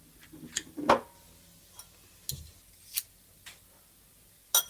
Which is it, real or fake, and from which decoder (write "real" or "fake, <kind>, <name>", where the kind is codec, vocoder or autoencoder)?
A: real